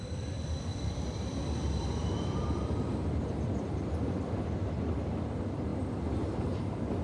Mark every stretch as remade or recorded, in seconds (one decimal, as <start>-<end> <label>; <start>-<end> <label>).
0.0-0.7 recorded; 0.7-3.9 remade; 3.9-7.0 recorded